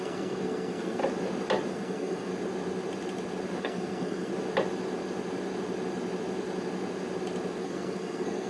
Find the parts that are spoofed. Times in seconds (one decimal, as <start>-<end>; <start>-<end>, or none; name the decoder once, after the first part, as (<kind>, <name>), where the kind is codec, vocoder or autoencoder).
0.0-1.0 (codec, SNAC); 1.7-2.3; 3.6-4.3; 7.6-8.5